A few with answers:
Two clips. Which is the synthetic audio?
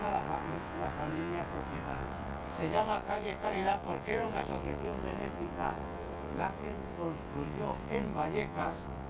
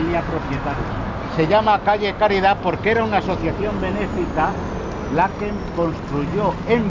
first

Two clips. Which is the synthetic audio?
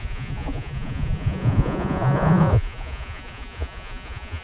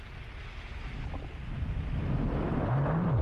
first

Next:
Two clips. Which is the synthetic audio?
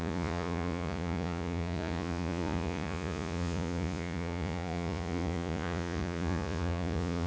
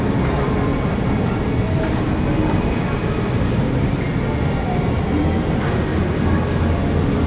first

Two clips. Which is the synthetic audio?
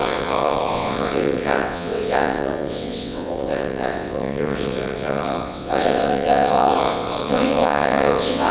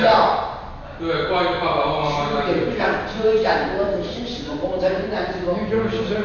first